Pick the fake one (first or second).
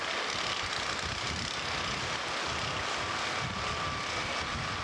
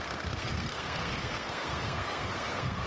second